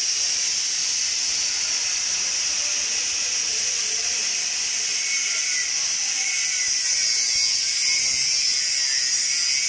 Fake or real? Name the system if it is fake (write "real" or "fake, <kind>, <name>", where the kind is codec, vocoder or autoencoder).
real